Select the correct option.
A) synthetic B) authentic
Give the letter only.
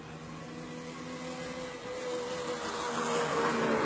B